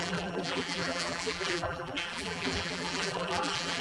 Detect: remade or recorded remade